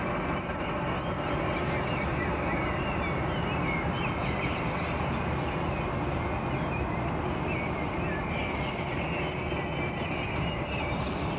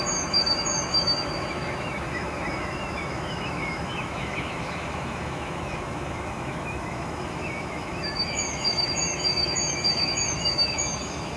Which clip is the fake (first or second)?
second